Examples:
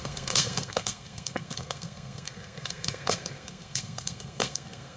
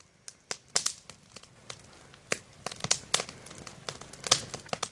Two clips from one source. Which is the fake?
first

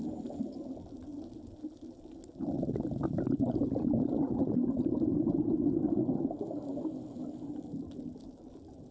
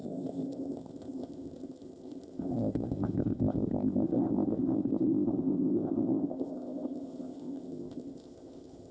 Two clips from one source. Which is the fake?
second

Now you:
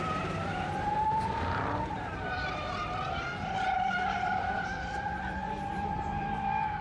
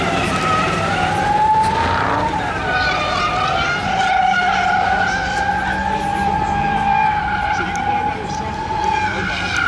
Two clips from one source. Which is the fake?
first